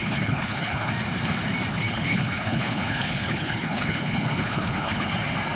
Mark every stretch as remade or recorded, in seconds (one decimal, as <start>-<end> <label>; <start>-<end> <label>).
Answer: 0.0-0.9 remade; 0.9-1.7 recorded; 1.7-5.1 remade; 5.1-5.6 recorded